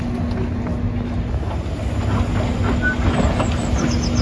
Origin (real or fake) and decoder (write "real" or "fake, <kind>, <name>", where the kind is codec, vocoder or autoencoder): real